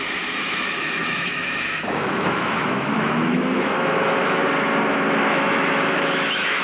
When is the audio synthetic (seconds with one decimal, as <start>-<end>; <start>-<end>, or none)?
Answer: 0.0-4.4; 5.3-6.6

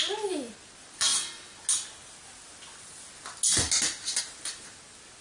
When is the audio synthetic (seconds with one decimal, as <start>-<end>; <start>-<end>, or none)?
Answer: none